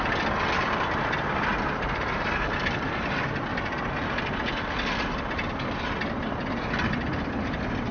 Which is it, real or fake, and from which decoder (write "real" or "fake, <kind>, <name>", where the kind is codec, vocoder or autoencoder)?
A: real